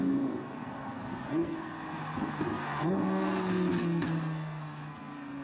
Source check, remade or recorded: remade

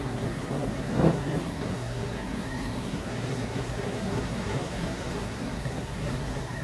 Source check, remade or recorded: remade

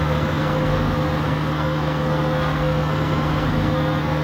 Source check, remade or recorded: remade